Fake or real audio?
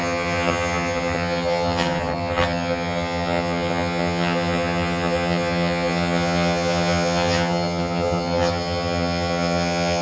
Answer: fake